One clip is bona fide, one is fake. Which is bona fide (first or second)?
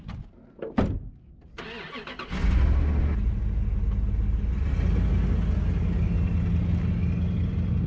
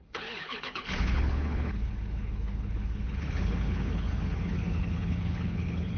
first